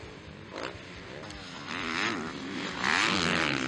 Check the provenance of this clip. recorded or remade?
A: recorded